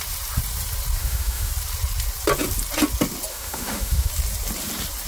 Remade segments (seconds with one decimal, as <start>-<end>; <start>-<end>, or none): 1.0-1.5; 3.3-4.1